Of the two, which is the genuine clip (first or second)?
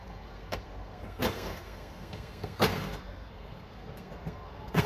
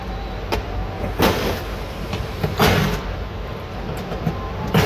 second